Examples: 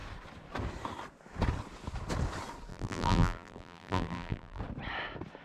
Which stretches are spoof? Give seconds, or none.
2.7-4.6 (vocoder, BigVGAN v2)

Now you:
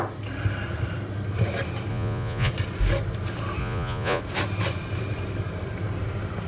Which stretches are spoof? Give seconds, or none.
1.9-2.5 (vocoder, Vocos); 3.6-4.2